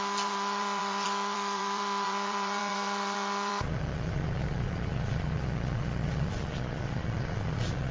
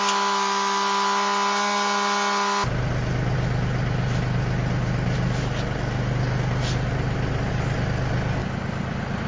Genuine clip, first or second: second